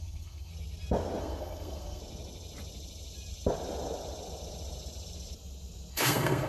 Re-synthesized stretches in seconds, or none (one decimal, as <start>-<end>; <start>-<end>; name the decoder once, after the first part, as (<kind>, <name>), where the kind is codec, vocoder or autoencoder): 0.0-0.5 (codec, SNAC); 1.2-2.0; 5.9-6.5